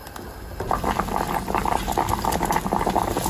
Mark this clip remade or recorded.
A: recorded